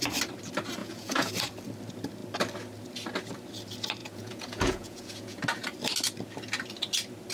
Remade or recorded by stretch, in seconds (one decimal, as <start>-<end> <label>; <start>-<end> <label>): 0.0-0.8 recorded; 0.8-1.3 remade; 1.3-4.0 recorded; 4.0-5.4 remade; 5.4-7.3 recorded

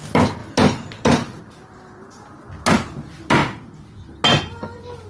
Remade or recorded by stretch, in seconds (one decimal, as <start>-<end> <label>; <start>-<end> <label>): 0.0-5.1 recorded